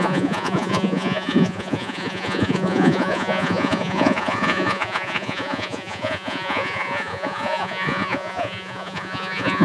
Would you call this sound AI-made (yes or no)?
yes